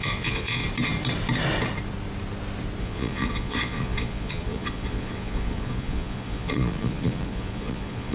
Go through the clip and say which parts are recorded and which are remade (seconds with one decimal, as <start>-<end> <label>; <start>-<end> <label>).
0.0-0.6 remade; 0.6-2.8 recorded; 2.8-8.1 remade